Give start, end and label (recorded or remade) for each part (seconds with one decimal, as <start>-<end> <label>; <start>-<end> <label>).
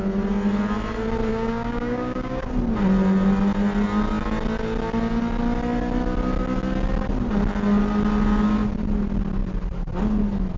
0.0-1.3 recorded; 1.3-2.5 remade; 2.5-10.6 recorded